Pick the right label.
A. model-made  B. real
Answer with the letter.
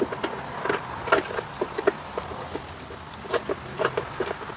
B